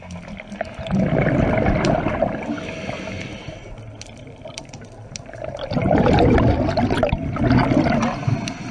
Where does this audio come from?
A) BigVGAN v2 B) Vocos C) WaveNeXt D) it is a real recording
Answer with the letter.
D